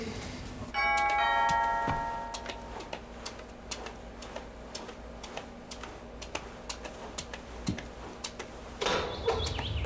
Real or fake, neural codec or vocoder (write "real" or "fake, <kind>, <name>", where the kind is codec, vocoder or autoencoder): real